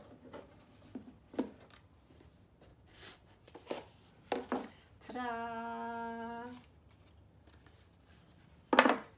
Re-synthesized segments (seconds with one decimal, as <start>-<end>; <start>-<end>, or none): 2.7-3.5